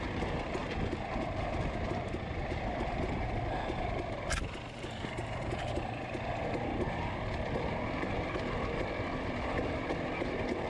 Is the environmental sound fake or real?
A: real